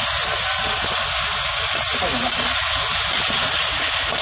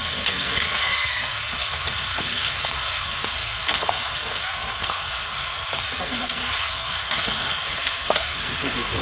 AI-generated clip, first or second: second